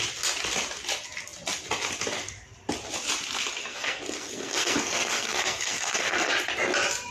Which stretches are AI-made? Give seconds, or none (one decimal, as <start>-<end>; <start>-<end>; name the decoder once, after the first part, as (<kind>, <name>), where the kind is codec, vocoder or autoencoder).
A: 3.6-6.3 (codec, SNAC)